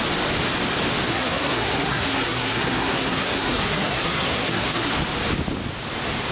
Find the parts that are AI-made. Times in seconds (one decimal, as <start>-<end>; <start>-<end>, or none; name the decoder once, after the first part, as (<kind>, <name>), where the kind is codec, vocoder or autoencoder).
1.1-4.9 (codec, SNAC)